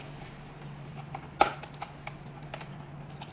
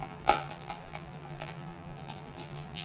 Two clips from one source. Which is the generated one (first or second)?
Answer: second